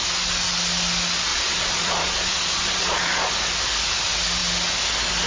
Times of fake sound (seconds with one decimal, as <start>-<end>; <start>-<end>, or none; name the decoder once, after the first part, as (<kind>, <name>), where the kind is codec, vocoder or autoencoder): 1.3-3.3 (vocoder, Vocos)